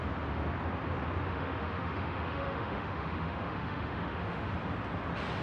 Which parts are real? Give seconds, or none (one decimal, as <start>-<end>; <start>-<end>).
0.0-1.3; 4.5-5.4